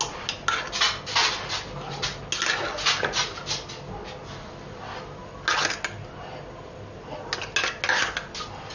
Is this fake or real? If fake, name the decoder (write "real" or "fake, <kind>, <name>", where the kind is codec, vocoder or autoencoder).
real